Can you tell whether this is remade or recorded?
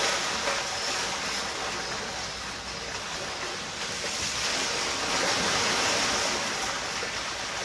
recorded